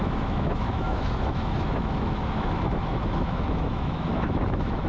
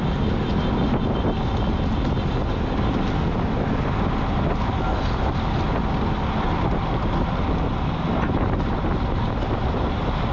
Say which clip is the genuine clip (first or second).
second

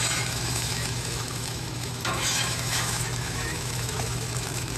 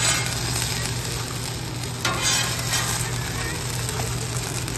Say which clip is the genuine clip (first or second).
second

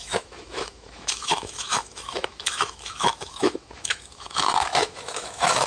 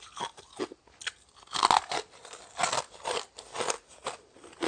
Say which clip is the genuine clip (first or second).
second